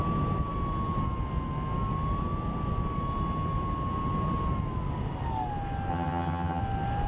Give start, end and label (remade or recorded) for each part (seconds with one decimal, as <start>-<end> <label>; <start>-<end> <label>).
0.0-5.9 recorded; 5.9-6.6 remade; 6.6-7.1 recorded